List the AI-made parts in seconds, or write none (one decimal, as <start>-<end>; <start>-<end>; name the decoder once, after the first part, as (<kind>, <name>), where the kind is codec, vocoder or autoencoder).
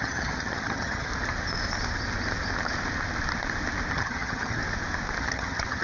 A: 0.0-1.1 (vocoder, HiFi-GAN); 3.9-4.6; 5.2-5.8